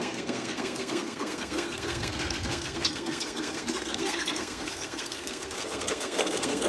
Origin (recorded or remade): remade